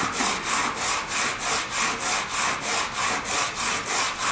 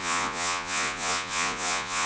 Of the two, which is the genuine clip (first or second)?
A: first